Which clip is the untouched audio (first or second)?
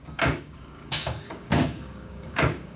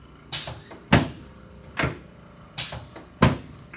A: second